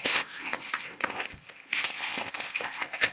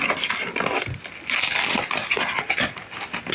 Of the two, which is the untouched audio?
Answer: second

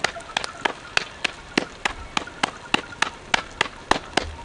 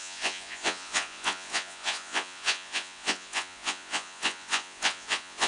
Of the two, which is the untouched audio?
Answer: first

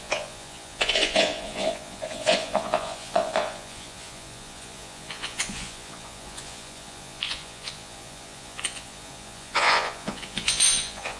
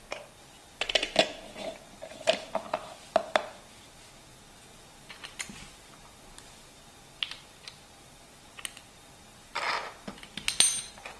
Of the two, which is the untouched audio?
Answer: second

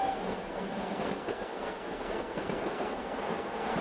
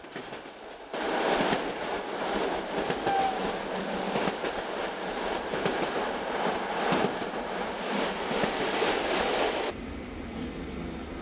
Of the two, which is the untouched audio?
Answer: second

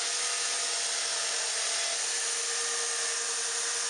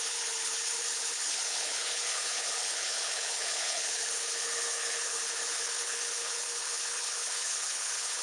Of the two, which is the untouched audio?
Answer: first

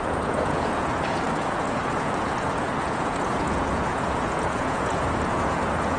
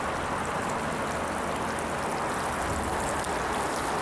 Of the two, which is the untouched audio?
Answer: second